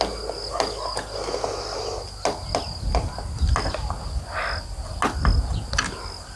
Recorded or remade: recorded